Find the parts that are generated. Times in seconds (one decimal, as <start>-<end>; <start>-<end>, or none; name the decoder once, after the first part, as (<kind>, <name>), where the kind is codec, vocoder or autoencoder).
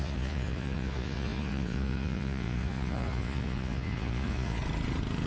0.0-4.6 (vocoder, Vocos)